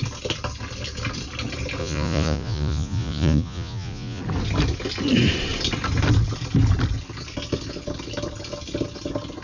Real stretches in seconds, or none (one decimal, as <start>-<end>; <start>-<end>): 0.0-1.8; 4.2-9.4